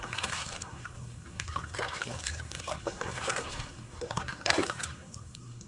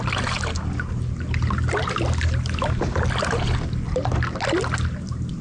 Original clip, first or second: second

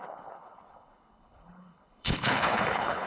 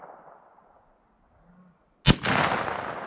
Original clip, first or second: second